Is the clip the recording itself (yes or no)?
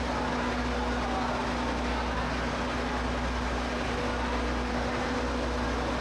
yes